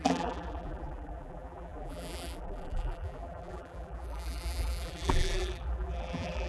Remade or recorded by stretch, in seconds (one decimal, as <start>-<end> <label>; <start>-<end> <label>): 0.0-6.5 remade